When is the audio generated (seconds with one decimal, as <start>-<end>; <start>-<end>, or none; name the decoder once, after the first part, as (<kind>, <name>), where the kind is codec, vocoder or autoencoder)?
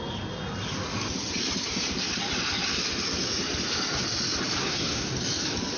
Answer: 4.6-5.1 (codec, SNAC)